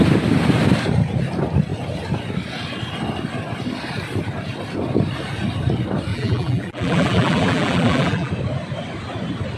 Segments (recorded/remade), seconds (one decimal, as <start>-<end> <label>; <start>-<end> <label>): 0.0-6.1 recorded; 6.1-8.3 remade; 8.3-9.6 recorded